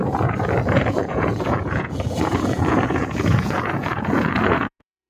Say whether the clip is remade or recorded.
remade